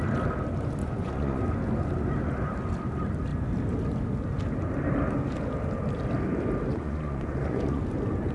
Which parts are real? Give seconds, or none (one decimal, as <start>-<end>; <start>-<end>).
0.0-0.8; 1.4-6.7; 7.8-8.3